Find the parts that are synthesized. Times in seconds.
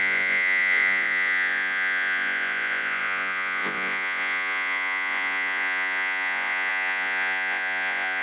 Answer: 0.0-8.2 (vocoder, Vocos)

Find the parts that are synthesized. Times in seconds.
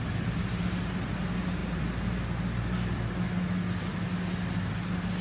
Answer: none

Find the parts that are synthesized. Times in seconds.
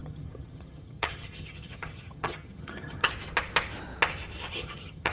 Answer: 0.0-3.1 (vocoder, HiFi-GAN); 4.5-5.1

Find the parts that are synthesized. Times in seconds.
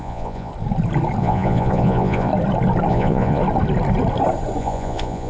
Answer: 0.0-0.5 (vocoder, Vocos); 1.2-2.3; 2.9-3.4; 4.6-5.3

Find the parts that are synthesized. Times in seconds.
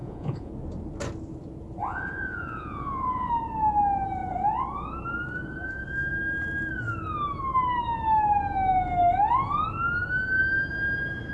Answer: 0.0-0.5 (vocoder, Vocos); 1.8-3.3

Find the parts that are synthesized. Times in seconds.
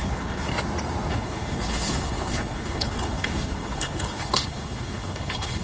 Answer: 0.0-0.5 (codec, HILCodec); 1.1-5.6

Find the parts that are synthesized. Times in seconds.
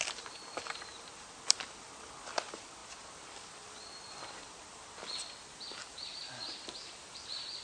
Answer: 0.0-7.6 (vocoder, BigVGAN v2)